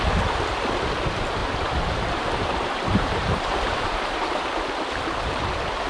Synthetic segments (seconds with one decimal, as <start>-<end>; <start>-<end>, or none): 1.4-4.5